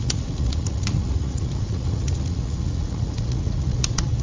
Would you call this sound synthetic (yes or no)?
yes